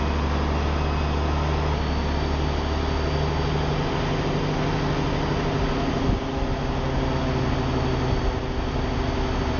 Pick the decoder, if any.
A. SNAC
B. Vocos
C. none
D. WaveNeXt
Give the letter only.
C